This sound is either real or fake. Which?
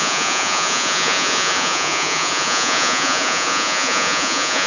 fake